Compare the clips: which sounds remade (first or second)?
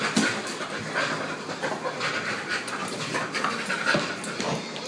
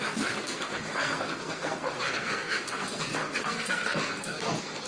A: second